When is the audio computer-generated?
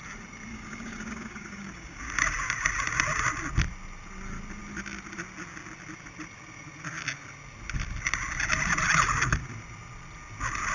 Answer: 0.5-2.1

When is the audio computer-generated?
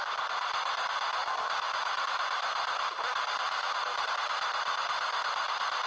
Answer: 1.2-4.1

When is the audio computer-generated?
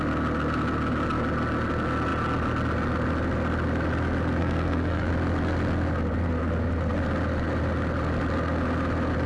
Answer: 4.4-5.1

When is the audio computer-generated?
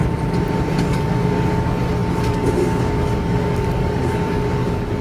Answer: 0.9-5.0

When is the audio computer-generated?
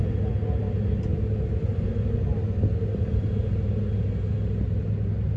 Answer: none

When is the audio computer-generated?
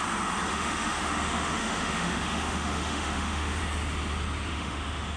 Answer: 0.5-3.6; 4.5-5.2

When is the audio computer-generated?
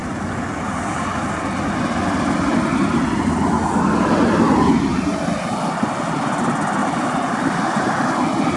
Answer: 6.8-7.9